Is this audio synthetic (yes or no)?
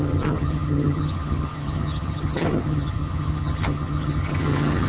yes